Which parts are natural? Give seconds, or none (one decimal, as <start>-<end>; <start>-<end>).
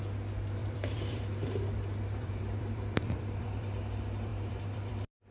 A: 0.0-0.6; 3.8-4.3